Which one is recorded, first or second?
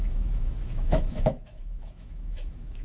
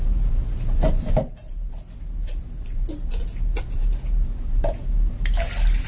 second